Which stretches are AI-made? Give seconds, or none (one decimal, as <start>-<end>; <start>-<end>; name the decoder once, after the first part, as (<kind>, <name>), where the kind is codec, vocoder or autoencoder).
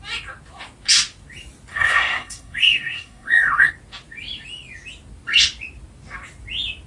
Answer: 1.7-3.7 (codec, SNAC)